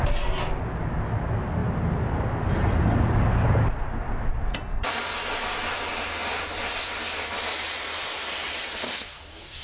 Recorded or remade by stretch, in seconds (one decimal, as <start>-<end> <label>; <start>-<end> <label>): 0.0-8.8 recorded; 8.8-9.6 remade